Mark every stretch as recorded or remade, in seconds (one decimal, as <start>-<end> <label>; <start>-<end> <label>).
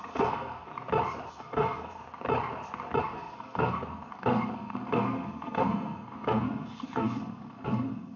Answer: 0.0-0.7 remade; 0.7-1.3 recorded; 1.3-2.0 remade; 2.0-3.0 recorded; 3.0-8.2 remade